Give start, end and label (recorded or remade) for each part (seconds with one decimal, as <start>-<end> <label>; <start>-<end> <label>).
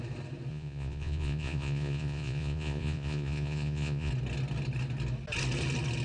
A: 0.0-0.5 recorded; 0.5-4.1 remade; 4.1-6.0 recorded